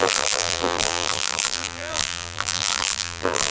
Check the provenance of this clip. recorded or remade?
remade